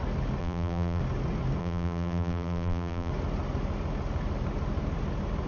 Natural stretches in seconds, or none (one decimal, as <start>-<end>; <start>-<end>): 0.0-0.4; 1.0-1.6; 3.1-5.5